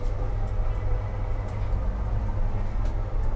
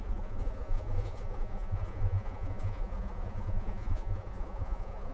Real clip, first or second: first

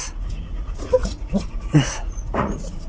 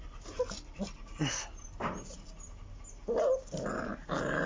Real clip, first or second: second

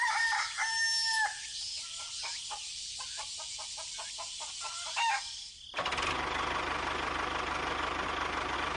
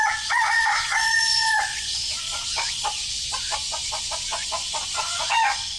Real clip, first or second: first